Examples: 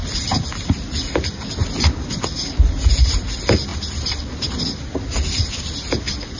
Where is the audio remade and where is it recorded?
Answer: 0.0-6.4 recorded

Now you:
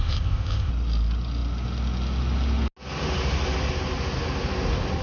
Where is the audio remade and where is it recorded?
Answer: 0.0-0.7 remade; 0.7-5.0 recorded

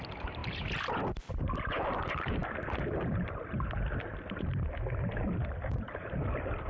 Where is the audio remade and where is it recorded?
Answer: 0.0-6.7 recorded

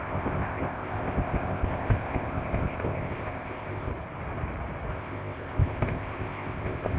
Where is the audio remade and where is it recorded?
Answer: 0.0-3.9 remade; 3.9-4.9 recorded; 4.9-7.0 remade